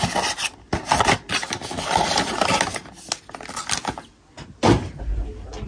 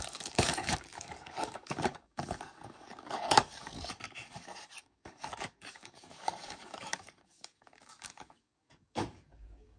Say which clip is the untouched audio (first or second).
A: first